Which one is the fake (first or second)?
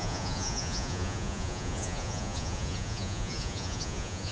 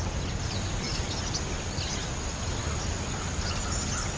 first